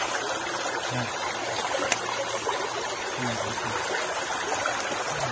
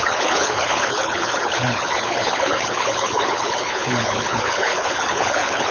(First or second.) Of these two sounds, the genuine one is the first